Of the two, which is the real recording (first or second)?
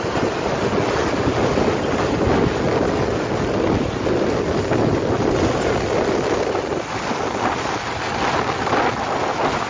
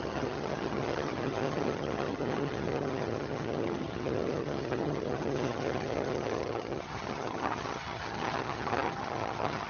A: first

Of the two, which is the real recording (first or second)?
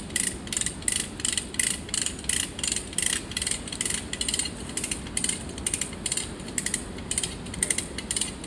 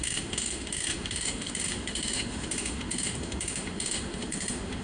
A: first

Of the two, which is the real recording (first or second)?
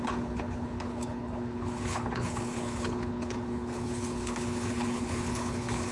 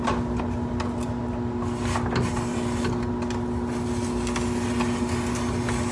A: second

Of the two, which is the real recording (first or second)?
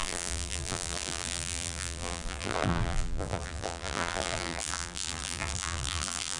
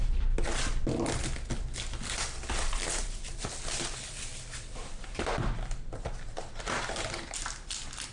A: second